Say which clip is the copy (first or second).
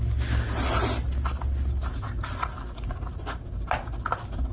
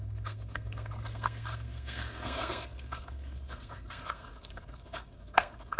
second